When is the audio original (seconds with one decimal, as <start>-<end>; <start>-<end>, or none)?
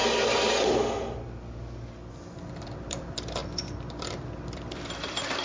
0.0-2.1; 3.4-4.0